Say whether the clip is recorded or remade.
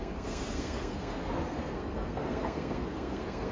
remade